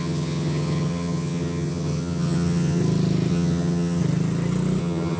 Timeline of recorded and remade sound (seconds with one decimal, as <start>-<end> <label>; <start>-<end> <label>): 0.0-2.8 remade; 2.8-3.3 recorded; 3.3-4.0 remade; 4.0-4.8 recorded; 4.8-5.2 remade